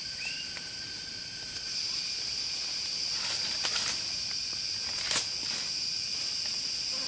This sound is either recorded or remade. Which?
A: recorded